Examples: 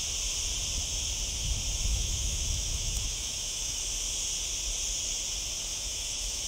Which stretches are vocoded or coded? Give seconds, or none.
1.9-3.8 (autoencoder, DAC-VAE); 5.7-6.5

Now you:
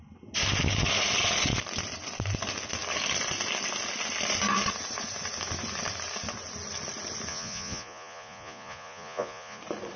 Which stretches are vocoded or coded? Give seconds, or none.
7.3-9.6 (vocoder, Vocos)